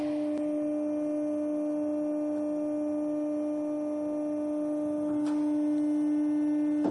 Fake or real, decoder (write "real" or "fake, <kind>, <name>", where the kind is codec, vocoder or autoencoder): real